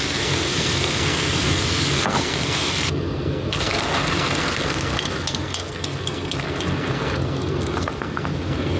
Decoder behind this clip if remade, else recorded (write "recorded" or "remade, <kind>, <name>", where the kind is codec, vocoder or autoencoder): remade, codec, SNAC